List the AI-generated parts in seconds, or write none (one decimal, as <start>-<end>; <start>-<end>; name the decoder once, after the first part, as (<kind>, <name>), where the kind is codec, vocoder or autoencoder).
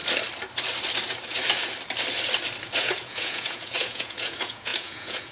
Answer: 2.8-5.3 (vocoder, Vocos)